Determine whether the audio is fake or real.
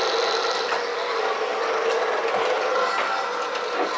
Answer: real